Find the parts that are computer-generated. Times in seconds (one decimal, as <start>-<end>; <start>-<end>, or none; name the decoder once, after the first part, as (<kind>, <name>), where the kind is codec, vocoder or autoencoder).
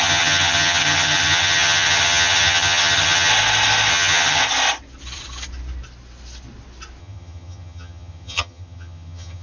0.0-3.3 (vocoder, HiFi-GAN); 3.9-4.4; 7.0-9.4